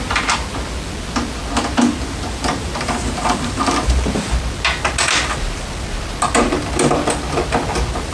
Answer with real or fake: real